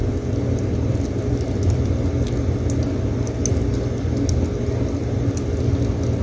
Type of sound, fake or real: real